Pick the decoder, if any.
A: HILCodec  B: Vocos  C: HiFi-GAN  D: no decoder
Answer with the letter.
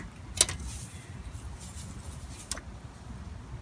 D